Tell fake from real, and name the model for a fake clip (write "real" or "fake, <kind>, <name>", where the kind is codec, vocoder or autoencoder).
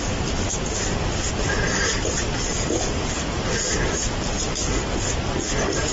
real